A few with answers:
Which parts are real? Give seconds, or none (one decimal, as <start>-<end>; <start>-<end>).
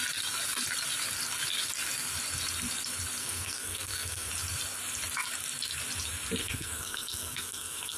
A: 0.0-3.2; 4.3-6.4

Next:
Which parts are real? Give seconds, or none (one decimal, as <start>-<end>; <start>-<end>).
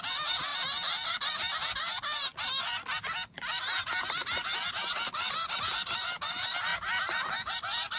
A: 0.0-8.0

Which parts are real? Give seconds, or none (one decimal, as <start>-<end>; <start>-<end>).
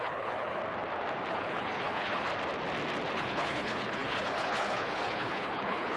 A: 0.6-1.3; 2.3-3.1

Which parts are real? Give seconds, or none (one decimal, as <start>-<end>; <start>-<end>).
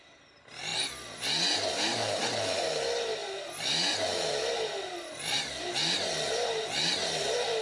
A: 0.0-7.6